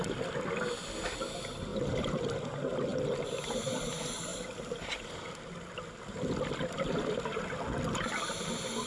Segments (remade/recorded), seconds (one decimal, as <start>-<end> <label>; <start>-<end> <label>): 0.0-4.3 recorded; 4.3-7.6 remade; 7.6-8.9 recorded